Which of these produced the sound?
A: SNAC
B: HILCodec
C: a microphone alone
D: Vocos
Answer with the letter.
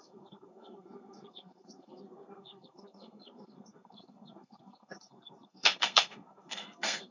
A